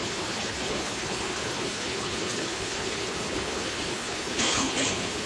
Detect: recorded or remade remade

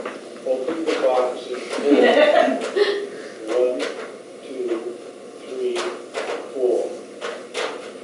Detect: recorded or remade recorded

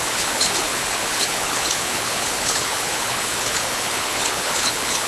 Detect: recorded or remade remade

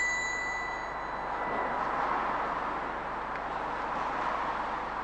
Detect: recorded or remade recorded